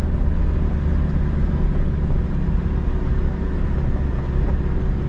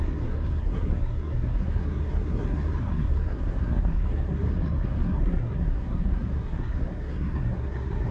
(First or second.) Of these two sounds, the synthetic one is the second